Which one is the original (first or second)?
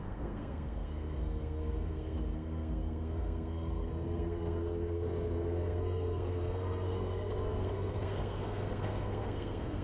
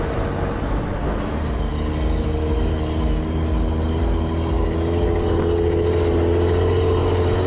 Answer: second